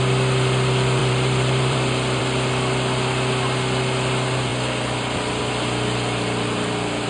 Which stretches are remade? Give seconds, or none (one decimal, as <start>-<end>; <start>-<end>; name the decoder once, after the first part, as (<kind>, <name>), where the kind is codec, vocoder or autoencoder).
1.0-2.2 (vocoder, BigVGAN v2)